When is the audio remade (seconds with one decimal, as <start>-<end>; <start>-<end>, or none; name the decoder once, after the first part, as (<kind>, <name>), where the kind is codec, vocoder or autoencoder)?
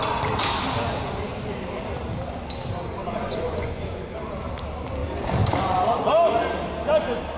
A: 3.0-4.1 (vocoder, Vocos)